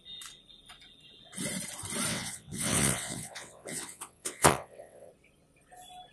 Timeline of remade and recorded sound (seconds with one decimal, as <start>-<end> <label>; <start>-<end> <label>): 0.0-2.1 recorded; 2.1-5.1 remade; 5.1-6.1 recorded